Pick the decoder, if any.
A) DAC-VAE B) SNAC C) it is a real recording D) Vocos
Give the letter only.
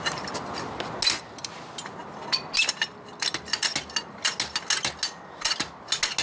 C